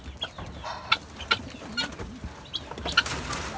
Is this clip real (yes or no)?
yes